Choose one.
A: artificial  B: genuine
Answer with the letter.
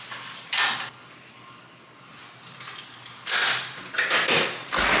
B